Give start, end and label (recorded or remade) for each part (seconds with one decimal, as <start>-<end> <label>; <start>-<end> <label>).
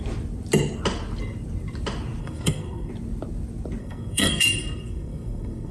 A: 0.0-2.2 recorded; 2.2-2.9 remade; 2.9-3.8 recorded; 3.8-5.7 remade